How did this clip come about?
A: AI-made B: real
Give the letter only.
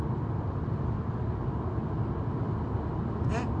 B